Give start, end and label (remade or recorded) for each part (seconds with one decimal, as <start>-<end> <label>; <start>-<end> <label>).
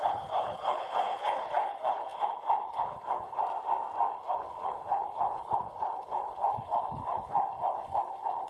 0.0-3.4 remade; 3.4-4.1 recorded; 4.1-8.5 remade